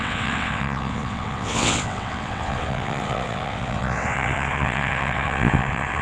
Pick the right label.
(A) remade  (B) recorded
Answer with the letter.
A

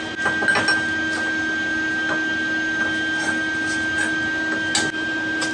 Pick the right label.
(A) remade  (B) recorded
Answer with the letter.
B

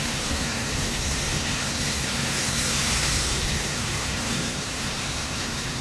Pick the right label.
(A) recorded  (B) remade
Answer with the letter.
B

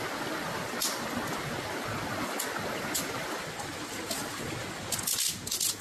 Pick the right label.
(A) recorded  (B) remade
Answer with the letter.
A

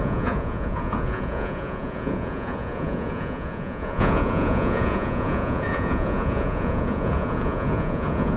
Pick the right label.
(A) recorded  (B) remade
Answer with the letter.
B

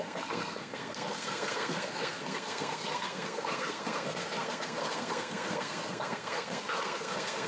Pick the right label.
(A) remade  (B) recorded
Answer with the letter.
A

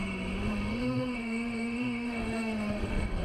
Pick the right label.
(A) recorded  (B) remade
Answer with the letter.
B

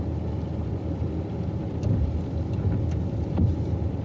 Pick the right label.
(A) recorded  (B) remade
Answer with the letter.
A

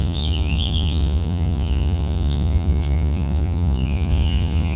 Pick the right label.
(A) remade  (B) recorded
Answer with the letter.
A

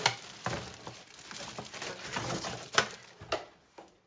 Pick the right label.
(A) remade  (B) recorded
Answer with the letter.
B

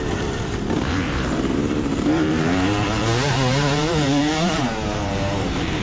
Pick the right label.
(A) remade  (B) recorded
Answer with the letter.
A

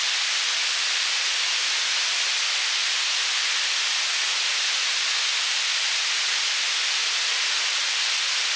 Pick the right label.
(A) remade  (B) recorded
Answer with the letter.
B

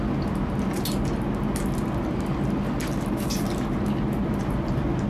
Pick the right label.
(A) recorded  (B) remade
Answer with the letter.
A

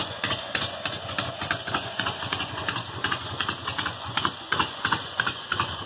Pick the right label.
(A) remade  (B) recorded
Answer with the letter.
A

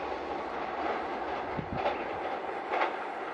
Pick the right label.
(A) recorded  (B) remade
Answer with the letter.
A